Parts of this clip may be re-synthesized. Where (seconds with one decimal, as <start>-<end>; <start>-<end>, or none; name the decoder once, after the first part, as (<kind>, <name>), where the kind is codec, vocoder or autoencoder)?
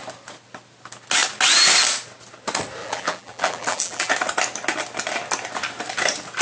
2.8-4.1 (vocoder, BigVGAN v2)